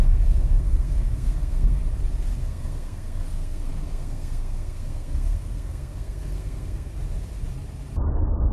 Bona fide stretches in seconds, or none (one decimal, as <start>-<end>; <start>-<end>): 1.8-2.4; 6.9-8.1